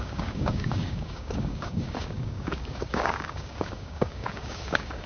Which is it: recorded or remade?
remade